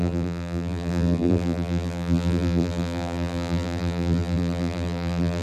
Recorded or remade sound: remade